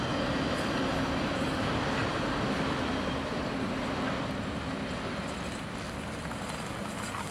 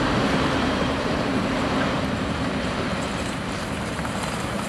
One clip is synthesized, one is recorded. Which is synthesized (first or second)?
second